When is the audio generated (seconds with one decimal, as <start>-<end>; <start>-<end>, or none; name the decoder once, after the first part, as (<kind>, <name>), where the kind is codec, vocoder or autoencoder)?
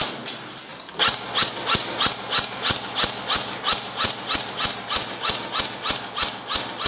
none